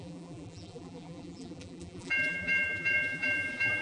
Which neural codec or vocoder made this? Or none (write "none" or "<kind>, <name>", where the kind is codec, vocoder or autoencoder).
vocoder, BigVGAN v2